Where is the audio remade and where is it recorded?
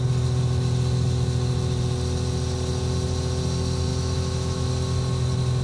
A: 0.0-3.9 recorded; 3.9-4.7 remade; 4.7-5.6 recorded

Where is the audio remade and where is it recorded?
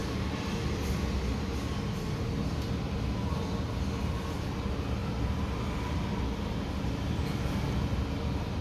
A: 0.0-8.6 recorded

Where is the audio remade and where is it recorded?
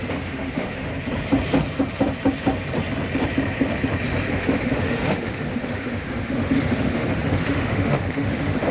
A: 0.0-0.9 remade; 0.9-4.3 recorded; 4.3-8.7 remade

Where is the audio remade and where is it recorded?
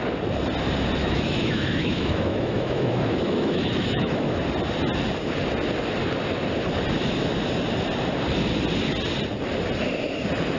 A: 0.0-1.0 recorded; 1.0-4.4 remade; 4.4-10.6 recorded